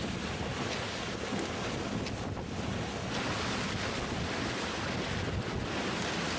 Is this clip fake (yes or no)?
no